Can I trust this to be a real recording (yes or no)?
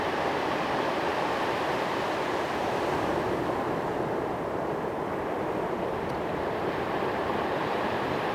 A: no